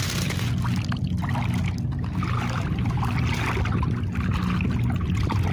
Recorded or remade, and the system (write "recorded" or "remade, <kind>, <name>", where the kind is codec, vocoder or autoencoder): recorded